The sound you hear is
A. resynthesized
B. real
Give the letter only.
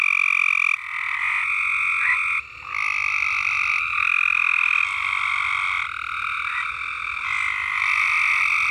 B